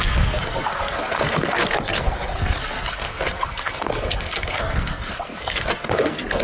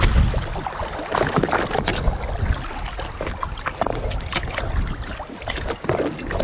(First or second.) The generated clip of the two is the first